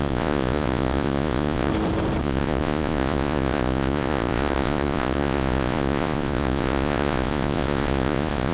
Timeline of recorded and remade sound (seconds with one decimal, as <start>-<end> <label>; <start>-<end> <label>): 0.0-1.7 remade; 1.7-2.2 recorded; 2.2-8.5 remade